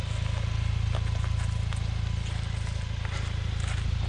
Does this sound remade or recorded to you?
recorded